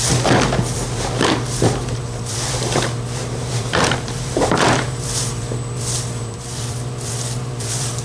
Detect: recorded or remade remade